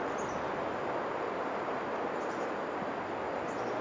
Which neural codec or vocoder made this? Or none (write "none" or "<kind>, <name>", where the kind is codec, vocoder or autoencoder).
none